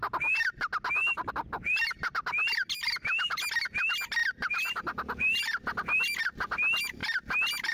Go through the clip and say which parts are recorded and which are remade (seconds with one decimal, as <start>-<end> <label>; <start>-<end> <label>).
0.0-4.2 recorded; 4.2-6.2 remade; 6.2-7.7 recorded